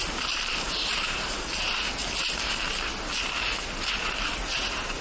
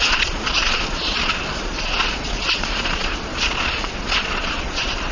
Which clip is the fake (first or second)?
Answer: second